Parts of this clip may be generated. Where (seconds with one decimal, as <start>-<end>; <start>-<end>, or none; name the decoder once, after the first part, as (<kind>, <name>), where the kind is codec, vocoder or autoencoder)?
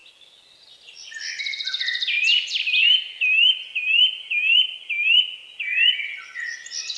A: none